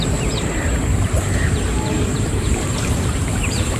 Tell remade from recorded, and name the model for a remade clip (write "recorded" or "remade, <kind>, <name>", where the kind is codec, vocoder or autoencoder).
remade, vocoder, BigVGAN v2